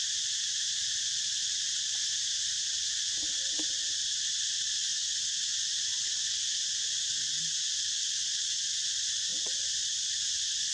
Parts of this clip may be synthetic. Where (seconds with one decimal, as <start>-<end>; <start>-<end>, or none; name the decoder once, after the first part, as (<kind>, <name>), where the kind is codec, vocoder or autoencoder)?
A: 0.0-4.3 (vocoder, BigVGAN v2)